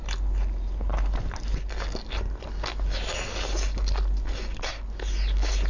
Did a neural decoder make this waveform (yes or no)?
no